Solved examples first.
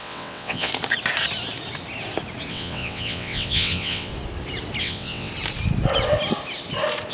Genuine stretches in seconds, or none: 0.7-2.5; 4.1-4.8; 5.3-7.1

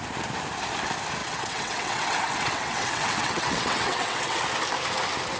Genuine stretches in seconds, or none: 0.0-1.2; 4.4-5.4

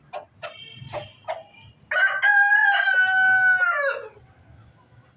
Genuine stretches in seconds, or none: 0.0-5.2